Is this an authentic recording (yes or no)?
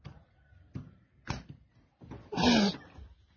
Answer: yes